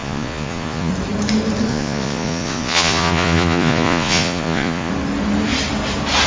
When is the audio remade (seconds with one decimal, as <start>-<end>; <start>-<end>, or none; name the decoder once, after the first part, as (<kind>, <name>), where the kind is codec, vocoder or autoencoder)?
0.0-0.9 (vocoder, Vocos); 1.7-4.9